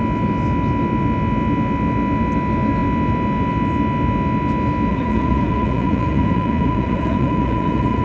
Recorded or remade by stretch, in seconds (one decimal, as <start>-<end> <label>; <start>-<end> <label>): 0.0-4.9 recorded; 4.9-8.0 remade